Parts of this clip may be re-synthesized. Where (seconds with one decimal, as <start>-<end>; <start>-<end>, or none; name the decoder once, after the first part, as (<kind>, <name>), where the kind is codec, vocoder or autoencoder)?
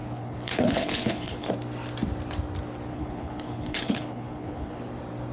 0.0-1.5 (codec, HILCodec); 2.9-4.8